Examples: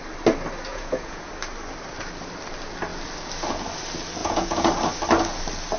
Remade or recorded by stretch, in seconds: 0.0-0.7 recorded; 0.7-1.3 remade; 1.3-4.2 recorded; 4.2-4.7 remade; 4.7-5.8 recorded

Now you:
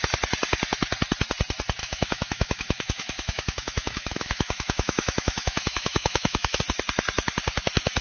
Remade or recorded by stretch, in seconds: 0.0-1.8 recorded; 1.8-6.6 remade; 6.6-8.0 recorded

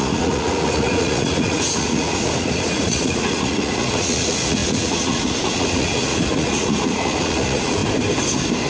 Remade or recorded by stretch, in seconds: 0.0-7.8 remade; 7.8-8.7 recorded

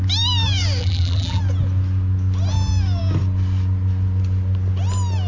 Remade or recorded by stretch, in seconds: 0.0-0.8 recorded; 0.8-1.4 remade; 1.4-5.3 recorded

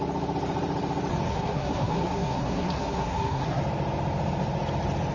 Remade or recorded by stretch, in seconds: 0.0-1.3 recorded; 1.3-3.6 remade; 3.6-5.1 recorded

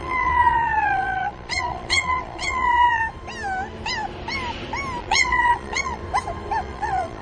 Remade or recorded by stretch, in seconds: 0.0-3.0 remade; 3.0-5.0 recorded; 5.0-6.0 remade; 6.0-6.6 recorded; 6.6-7.2 remade

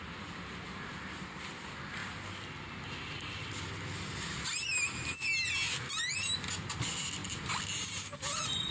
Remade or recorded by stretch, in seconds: 0.0-8.7 recorded

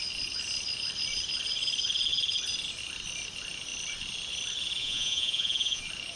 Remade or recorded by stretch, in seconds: 0.0-4.8 recorded; 4.8-5.8 remade; 5.8-6.2 recorded